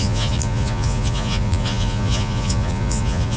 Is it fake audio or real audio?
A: fake